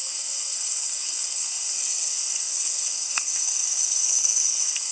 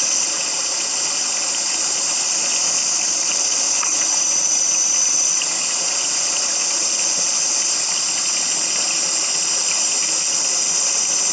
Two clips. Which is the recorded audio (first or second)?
second